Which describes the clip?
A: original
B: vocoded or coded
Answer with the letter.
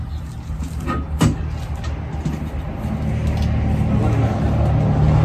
A